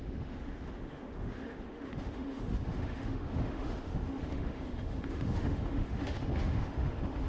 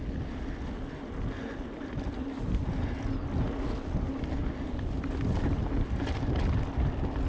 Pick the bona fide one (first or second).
second